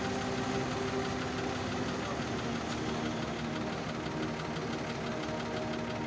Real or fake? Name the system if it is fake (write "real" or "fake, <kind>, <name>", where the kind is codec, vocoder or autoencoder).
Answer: real